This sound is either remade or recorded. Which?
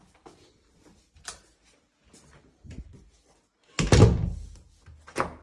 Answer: recorded